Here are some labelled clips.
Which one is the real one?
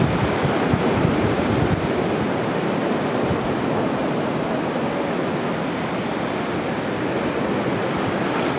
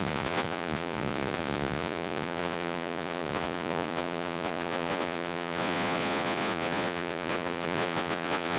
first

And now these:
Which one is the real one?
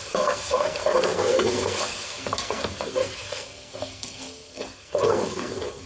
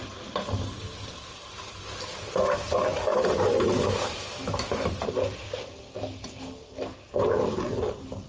second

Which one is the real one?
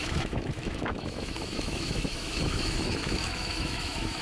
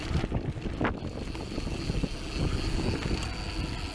second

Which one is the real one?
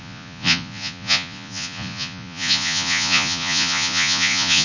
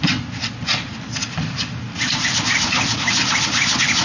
second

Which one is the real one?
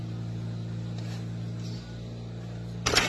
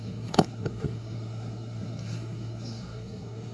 first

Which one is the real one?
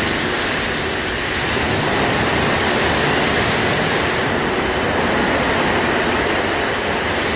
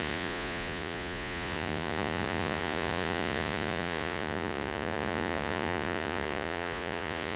first